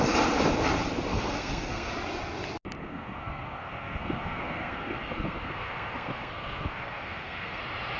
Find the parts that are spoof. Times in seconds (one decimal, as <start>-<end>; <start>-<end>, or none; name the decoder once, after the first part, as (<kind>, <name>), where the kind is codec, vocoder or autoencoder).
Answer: 1.1-1.9 (codec, SNAC); 2.8-7.6